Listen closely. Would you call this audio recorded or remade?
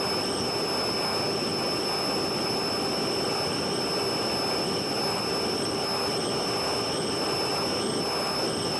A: recorded